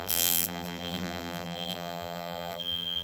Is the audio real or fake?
fake